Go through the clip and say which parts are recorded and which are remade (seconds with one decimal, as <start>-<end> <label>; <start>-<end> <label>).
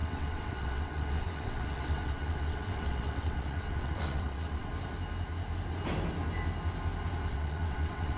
0.0-4.7 remade; 4.7-7.3 recorded; 7.3-8.2 remade